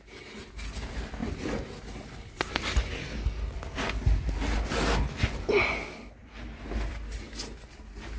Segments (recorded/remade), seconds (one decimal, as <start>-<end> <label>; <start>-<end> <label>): 0.0-8.2 recorded